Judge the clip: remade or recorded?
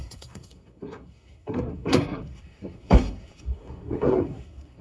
remade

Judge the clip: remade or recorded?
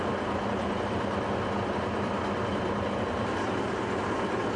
recorded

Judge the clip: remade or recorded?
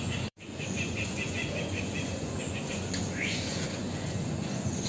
remade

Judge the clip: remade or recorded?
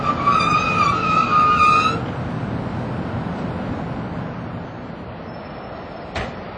recorded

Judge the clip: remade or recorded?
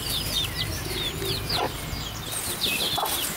recorded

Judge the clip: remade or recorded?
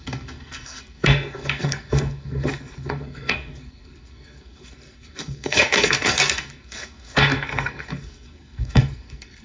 remade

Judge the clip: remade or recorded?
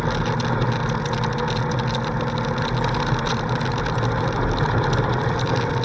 recorded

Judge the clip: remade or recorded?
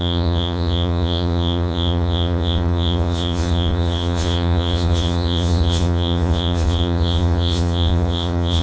remade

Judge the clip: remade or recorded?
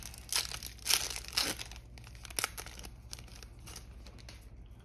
recorded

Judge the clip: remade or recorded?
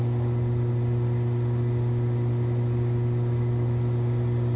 recorded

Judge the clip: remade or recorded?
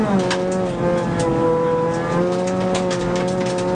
recorded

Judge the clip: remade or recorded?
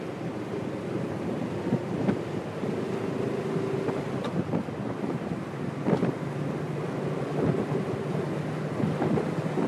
recorded